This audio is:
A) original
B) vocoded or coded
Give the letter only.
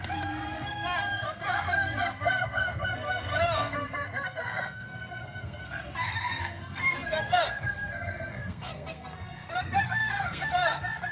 B